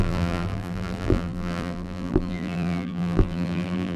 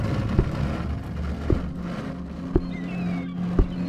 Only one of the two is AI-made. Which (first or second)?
first